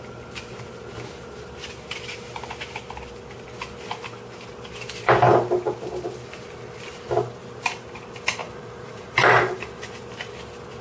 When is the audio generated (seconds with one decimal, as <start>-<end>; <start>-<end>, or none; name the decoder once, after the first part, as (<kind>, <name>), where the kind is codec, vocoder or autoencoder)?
8.4-9.9 (vocoder, BigVGAN v2)